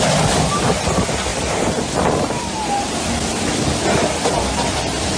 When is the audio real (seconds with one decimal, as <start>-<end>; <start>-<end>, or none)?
0.0-1.3; 3.6-5.2